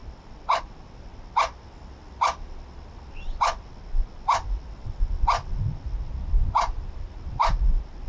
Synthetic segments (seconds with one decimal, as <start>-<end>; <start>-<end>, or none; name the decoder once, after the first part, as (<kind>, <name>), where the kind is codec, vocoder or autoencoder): none